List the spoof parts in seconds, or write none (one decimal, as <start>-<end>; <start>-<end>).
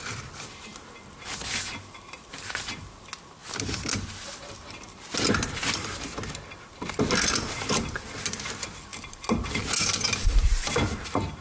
none